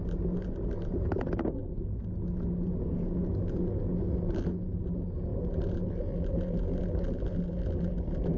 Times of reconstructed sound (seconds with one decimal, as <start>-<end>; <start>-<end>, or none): none